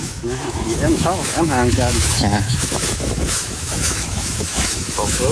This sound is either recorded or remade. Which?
remade